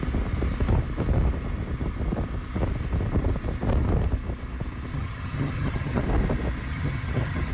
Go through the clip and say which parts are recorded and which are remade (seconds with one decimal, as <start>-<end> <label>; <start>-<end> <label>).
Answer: 0.0-4.9 recorded; 4.9-6.0 remade; 6.0-6.7 recorded; 6.7-7.5 remade

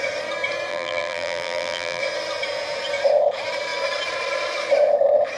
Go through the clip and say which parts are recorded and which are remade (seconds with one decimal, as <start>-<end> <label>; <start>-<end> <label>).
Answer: 0.0-0.7 recorded; 0.7-2.0 remade; 2.0-5.4 recorded

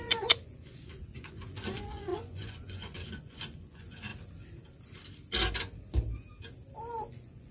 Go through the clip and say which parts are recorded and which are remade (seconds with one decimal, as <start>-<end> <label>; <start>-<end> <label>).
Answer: 0.0-4.1 remade; 4.1-7.1 recorded; 7.1-7.5 remade

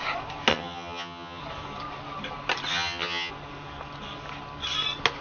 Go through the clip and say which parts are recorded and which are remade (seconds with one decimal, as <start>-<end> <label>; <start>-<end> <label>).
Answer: 0.0-0.5 recorded; 0.5-1.4 remade; 1.4-2.7 recorded; 2.7-3.3 remade; 3.3-5.2 recorded

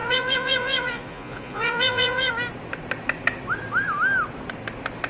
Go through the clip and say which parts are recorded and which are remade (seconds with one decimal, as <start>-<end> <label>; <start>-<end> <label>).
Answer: 0.0-2.3 remade; 2.3-5.1 recorded

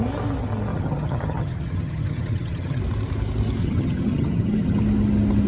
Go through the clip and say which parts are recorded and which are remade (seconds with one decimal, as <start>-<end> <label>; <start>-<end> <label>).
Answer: 0.0-0.7 recorded; 0.7-2.8 remade; 2.8-3.6 recorded; 3.6-4.8 remade; 4.8-5.5 recorded